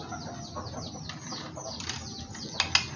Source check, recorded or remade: recorded